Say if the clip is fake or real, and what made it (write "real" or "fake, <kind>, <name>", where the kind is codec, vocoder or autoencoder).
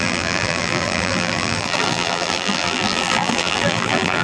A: fake, vocoder, BigVGAN v2